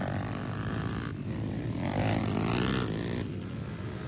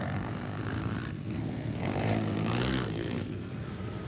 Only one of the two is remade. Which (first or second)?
second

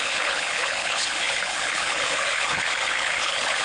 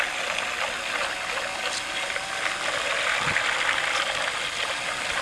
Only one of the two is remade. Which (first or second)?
first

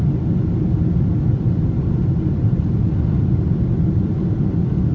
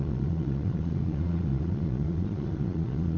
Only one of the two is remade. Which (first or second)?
second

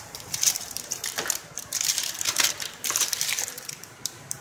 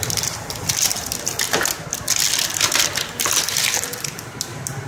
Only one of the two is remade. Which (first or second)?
first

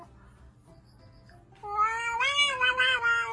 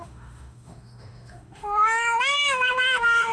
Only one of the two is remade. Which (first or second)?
second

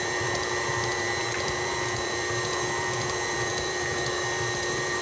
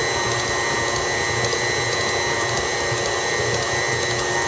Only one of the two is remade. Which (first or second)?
first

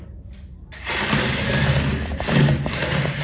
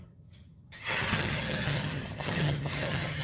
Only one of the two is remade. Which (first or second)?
second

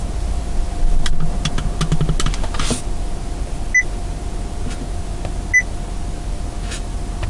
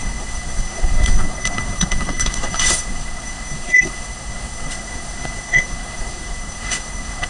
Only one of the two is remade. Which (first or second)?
second